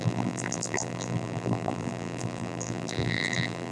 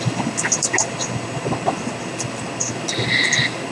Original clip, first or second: second